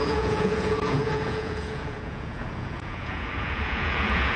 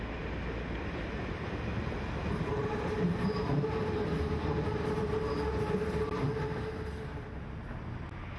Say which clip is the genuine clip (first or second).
second